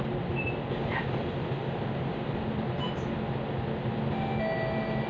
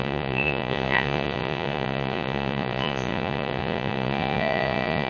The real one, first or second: first